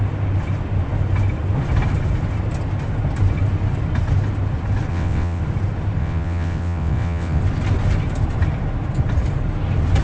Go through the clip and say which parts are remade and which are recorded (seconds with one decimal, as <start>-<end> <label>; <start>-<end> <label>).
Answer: 0.0-4.9 recorded; 4.9-5.4 remade; 5.4-6.0 recorded; 6.0-7.4 remade; 7.4-10.0 recorded